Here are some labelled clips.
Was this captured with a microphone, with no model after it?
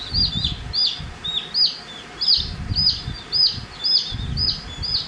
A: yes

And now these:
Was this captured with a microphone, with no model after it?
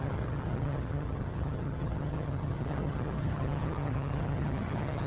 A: no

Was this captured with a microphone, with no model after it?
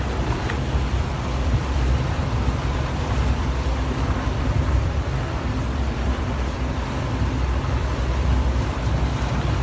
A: no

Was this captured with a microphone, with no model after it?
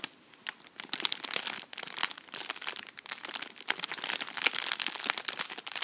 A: yes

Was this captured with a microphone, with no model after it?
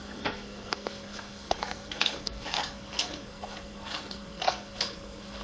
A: no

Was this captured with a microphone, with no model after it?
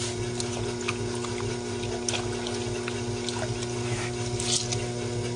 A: yes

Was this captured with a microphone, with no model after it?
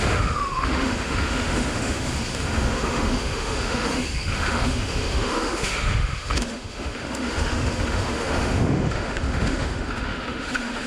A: no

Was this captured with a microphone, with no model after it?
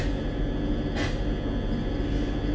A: yes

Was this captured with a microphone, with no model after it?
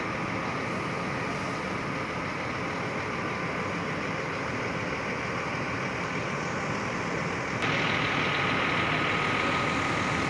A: yes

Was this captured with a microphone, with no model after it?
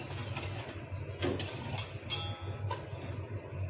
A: yes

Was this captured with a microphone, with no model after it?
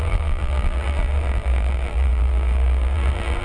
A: no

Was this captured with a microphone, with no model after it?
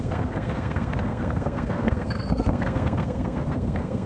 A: no